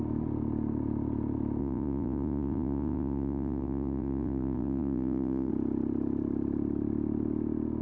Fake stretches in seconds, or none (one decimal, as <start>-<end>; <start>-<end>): 1.6-5.5